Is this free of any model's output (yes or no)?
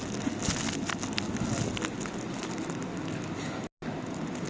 yes